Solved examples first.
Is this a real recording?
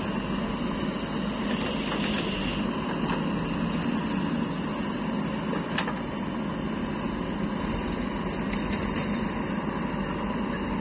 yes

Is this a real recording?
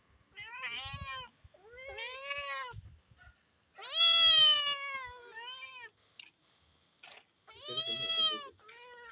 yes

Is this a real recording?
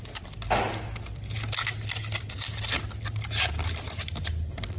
yes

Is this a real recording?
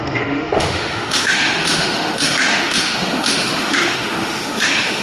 no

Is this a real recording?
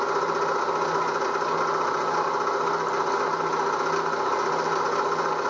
yes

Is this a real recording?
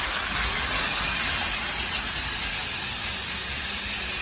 yes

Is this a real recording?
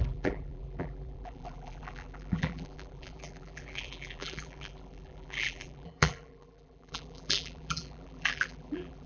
no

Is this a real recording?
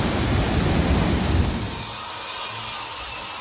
yes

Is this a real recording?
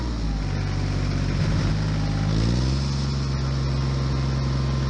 yes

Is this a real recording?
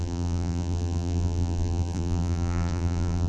no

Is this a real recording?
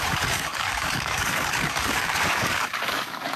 no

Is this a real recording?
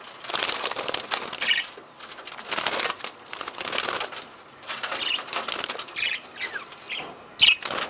yes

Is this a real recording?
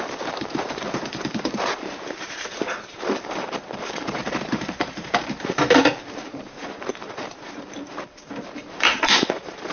no